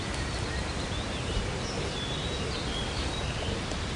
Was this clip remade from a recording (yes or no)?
no